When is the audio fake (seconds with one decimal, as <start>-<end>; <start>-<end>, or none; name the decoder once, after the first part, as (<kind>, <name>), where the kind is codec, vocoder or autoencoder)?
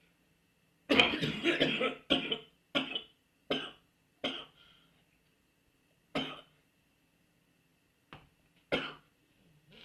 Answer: none